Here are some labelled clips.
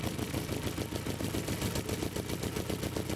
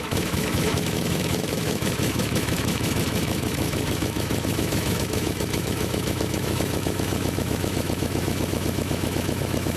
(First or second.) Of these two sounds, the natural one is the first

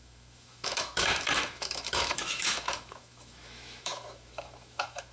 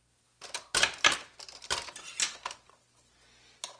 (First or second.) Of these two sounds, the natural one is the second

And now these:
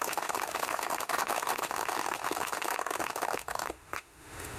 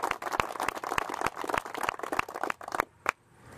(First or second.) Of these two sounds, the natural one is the second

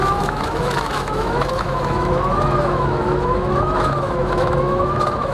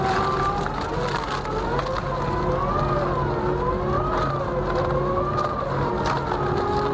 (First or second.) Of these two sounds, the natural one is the second